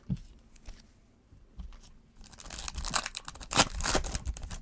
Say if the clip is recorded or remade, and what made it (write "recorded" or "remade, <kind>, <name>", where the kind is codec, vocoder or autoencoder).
recorded